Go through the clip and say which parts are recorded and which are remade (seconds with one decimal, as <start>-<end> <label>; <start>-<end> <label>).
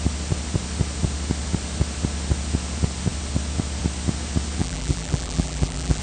0.0-4.6 recorded; 4.6-6.0 remade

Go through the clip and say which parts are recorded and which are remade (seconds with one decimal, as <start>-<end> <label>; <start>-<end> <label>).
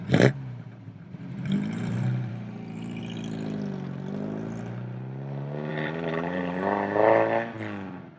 0.0-3.0 remade; 3.0-5.7 recorded; 5.7-6.4 remade; 6.4-8.2 recorded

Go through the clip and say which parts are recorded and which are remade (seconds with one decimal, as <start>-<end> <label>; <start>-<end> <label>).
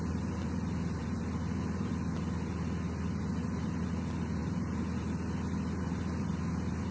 0.0-1.0 recorded; 1.0-1.9 remade; 1.9-6.9 recorded